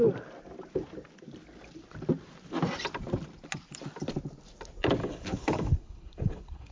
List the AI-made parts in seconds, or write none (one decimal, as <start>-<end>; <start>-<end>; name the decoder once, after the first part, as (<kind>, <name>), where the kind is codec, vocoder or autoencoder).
5.0-6.7 (codec, HILCodec)